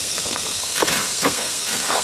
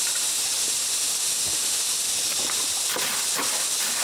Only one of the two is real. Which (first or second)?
second